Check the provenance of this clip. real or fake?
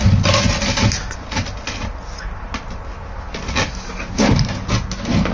real